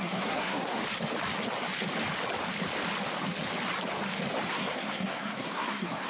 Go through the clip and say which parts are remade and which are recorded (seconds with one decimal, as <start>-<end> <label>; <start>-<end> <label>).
0.0-0.8 remade; 0.8-4.5 recorded; 4.5-6.1 remade